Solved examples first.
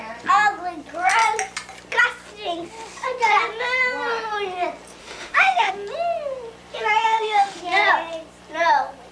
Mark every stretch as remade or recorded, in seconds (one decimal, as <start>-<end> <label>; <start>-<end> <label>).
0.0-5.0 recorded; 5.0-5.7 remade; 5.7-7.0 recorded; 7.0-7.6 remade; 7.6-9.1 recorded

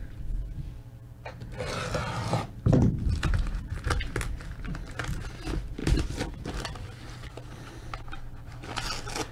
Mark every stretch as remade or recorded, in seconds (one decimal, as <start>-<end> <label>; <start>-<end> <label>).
0.0-5.8 recorded; 5.8-6.3 remade; 6.3-9.3 recorded

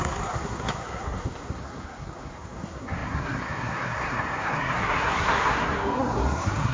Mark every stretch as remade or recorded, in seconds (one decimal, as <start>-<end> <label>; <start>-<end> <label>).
0.0-6.7 remade

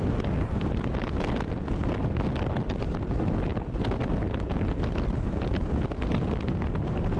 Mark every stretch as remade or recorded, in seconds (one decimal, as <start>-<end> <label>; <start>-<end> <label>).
0.0-7.2 recorded

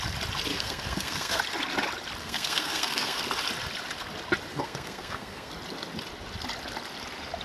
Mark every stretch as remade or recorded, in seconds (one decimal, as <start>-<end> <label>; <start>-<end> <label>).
0.0-0.5 recorded; 0.5-1.4 remade; 1.4-2.2 recorded; 2.2-3.2 remade; 3.2-4.5 recorded; 4.5-5.5 remade; 5.5-7.4 recorded

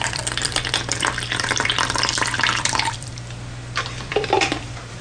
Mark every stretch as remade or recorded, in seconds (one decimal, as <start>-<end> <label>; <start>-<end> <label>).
0.0-3.1 remade; 3.1-4.0 recorded; 4.0-5.0 remade